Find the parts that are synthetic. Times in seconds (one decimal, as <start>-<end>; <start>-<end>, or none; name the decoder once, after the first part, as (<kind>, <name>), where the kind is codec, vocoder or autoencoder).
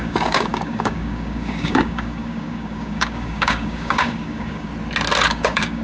0.0-4.7 (codec, DAC); 5.3-5.8